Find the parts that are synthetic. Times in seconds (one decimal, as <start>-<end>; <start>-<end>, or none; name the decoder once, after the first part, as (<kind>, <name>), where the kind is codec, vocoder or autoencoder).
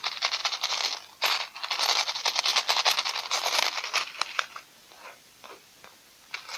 0.4-1.4 (vocoder, BigVGAN v2); 2.5-6.6